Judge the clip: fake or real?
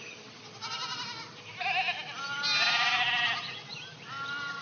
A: real